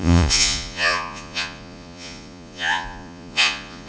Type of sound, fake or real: fake